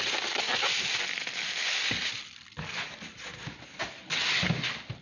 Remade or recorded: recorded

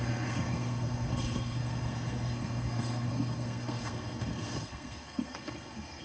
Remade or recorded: remade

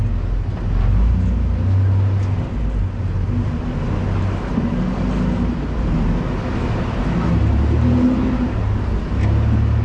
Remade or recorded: recorded